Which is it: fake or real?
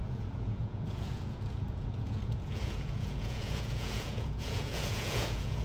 fake